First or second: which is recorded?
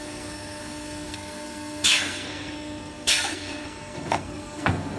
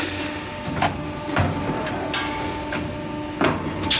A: second